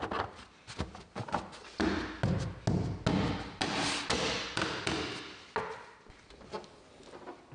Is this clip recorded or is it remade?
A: recorded